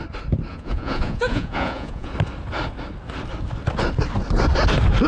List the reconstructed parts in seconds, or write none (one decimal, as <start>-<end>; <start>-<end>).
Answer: 0.5-2.1